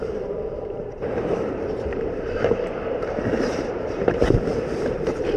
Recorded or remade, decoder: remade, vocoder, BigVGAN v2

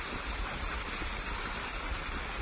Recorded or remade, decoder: recorded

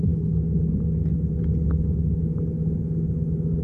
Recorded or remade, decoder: recorded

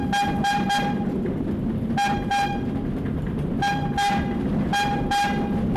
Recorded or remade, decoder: recorded